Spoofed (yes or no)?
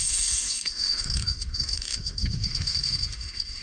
yes